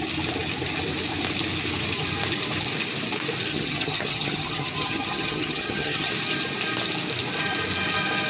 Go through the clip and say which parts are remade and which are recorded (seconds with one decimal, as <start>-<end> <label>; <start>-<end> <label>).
0.0-3.5 recorded; 3.5-6.1 remade; 6.1-8.3 recorded